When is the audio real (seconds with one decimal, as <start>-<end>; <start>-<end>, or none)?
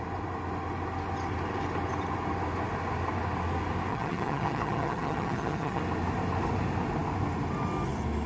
0.0-3.9; 5.8-8.3